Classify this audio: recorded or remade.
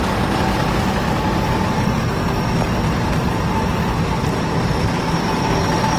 recorded